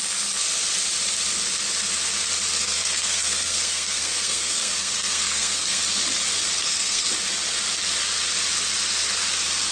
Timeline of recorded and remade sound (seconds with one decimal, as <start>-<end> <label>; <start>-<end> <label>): 0.0-2.6 recorded; 2.6-5.8 remade; 5.8-6.6 recorded; 6.6-7.1 remade; 7.1-9.7 recorded